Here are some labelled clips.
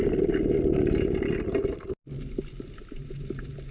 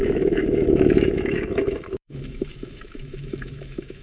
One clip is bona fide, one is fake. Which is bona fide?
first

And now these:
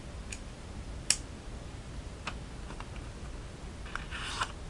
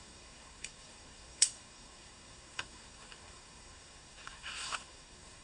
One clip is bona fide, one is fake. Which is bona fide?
first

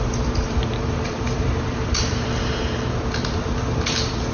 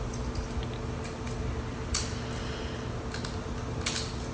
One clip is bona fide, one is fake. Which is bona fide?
second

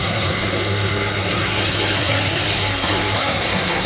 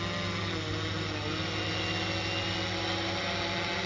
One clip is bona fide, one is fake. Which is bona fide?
second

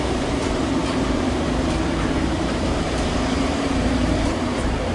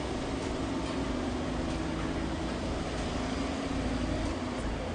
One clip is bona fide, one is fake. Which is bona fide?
second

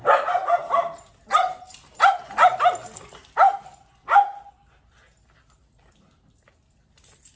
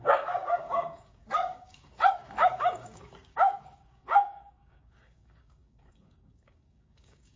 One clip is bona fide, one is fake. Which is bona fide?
first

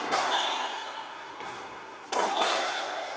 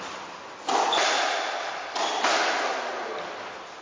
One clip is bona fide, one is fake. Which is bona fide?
second